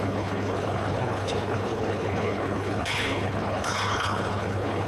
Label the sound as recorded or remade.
remade